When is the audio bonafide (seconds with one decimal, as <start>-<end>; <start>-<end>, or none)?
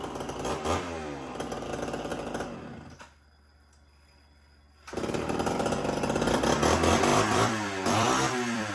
0.0-7.1